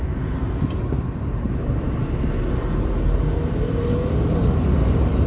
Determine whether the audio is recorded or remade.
recorded